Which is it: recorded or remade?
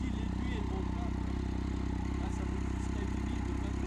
recorded